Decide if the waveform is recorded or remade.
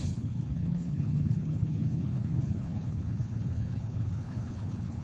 remade